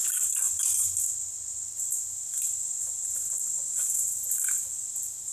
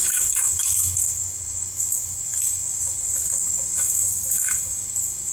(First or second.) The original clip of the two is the first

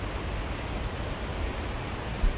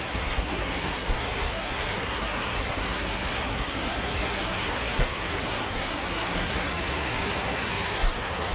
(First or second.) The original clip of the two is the first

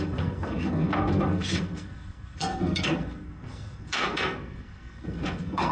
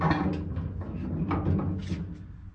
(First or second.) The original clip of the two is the second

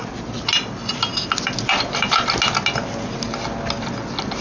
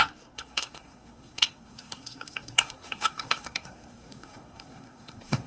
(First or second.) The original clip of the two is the first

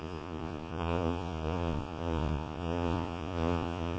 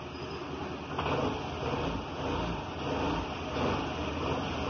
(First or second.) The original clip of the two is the second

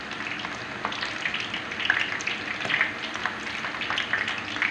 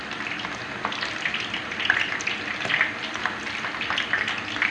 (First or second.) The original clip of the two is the first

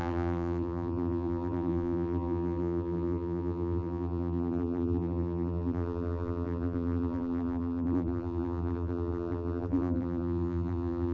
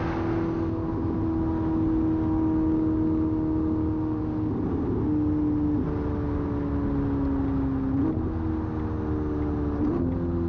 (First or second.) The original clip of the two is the second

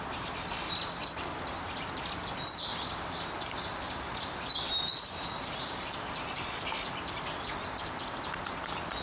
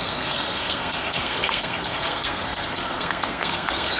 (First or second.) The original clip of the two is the first